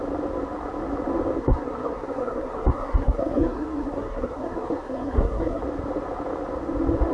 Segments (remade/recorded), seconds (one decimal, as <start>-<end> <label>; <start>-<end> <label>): 0.0-1.4 recorded; 1.4-5.6 remade; 5.6-7.1 recorded